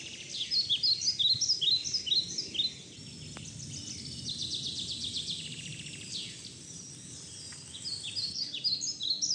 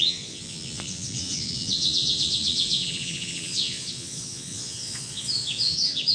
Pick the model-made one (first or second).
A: second